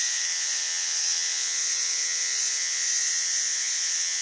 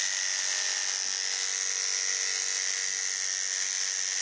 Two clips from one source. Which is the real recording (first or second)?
second